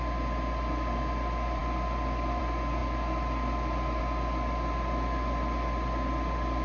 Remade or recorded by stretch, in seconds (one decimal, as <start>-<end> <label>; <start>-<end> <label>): 0.0-6.6 recorded

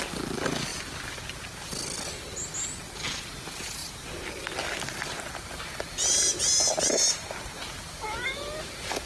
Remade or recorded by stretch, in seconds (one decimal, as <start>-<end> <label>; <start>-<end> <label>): 0.0-9.1 recorded

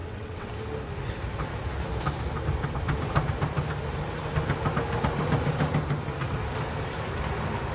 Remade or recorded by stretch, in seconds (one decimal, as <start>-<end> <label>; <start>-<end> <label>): 0.0-0.5 remade; 0.5-7.7 recorded

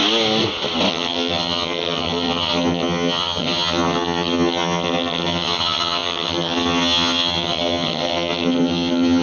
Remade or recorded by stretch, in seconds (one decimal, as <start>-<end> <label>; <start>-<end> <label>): 0.0-0.9 recorded; 0.9-9.2 remade

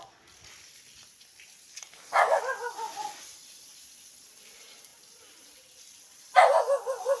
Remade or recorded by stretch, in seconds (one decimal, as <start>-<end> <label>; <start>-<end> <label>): 0.0-1.7 recorded; 1.7-2.4 remade; 2.4-7.2 recorded

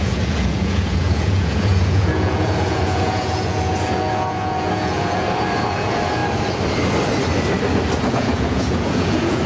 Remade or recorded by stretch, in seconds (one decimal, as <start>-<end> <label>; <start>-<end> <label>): 0.0-6.2 remade; 6.2-8.1 recorded; 8.1-9.5 remade

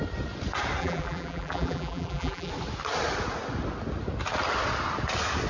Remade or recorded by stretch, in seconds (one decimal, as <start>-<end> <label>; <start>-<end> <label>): 0.0-0.8 recorded; 0.8-2.5 remade; 2.5-5.5 recorded